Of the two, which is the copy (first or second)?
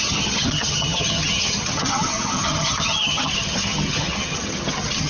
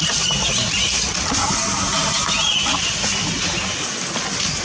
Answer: first